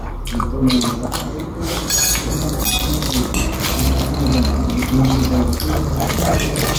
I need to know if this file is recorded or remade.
recorded